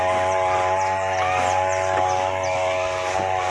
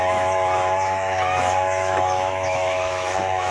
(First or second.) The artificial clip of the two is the second